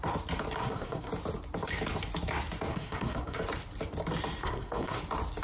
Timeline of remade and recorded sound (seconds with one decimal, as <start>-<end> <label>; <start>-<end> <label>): 0.0-0.6 recorded; 0.6-1.1 remade; 1.1-2.7 recorded; 2.7-3.4 remade; 3.4-4.4 recorded; 4.4-5.0 remade; 5.0-5.4 recorded